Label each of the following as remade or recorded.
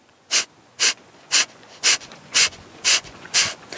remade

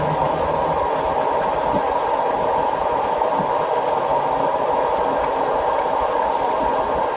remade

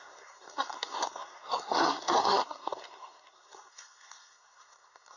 remade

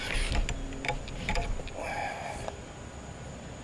recorded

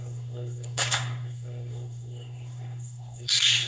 remade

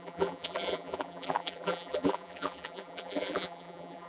remade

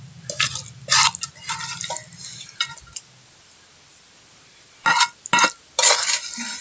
recorded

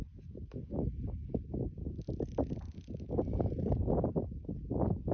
recorded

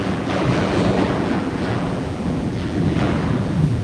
remade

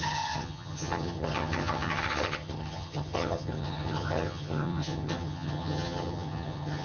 remade